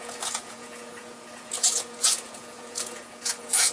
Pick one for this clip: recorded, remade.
remade